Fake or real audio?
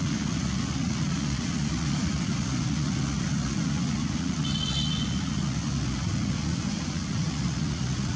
fake